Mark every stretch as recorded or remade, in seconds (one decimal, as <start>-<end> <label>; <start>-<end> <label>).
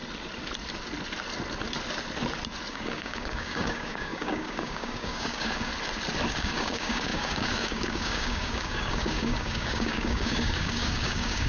0.0-2.7 recorded; 2.7-5.7 remade; 5.7-6.3 recorded; 6.3-11.5 remade